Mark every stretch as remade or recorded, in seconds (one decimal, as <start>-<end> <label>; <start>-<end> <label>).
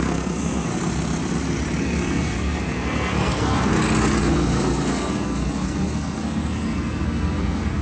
0.0-0.7 remade; 0.7-1.8 recorded; 1.8-3.7 remade; 3.7-4.2 recorded; 4.2-7.8 remade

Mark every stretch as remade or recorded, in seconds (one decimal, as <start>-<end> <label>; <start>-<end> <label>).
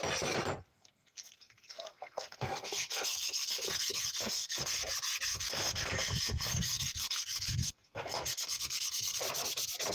0.0-0.7 recorded; 0.7-4.8 remade; 4.8-5.3 recorded; 5.3-9.2 remade; 9.2-9.9 recorded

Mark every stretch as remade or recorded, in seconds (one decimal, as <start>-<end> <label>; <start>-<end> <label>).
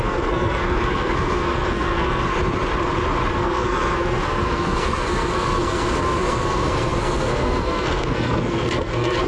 0.0-2.3 remade; 2.3-3.3 recorded; 3.3-9.3 remade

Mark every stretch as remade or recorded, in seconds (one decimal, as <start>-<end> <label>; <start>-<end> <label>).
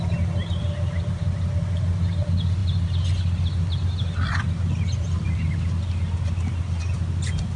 0.0-7.6 recorded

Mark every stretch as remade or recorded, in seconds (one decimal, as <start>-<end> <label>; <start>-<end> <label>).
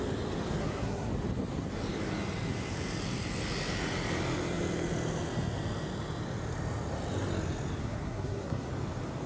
0.0-0.6 recorded; 0.6-1.1 remade; 1.1-7.8 recorded; 7.8-8.7 remade; 8.7-9.3 recorded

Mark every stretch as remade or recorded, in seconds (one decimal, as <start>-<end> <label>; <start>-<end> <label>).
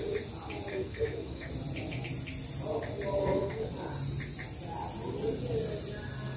0.0-0.7 recorded; 0.7-1.5 remade; 1.5-3.2 recorded; 3.2-3.7 remade; 3.7-6.4 recorded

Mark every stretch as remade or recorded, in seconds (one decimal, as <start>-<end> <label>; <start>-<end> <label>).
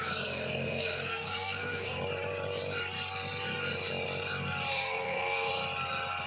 0.0-2.0 remade; 2.0-4.7 recorded; 4.7-5.5 remade; 5.5-6.3 recorded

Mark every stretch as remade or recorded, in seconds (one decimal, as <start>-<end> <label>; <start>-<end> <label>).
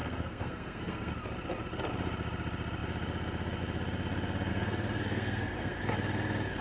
0.0-1.1 remade; 1.1-4.5 recorded; 4.5-5.8 remade; 5.8-6.6 recorded